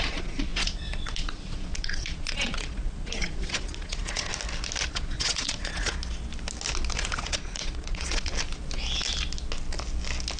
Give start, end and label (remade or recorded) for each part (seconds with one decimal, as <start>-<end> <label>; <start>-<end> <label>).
0.0-4.3 remade; 4.3-4.9 recorded; 4.9-6.0 remade; 6.0-7.0 recorded; 7.0-8.3 remade; 8.3-10.4 recorded